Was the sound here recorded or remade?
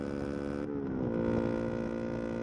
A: recorded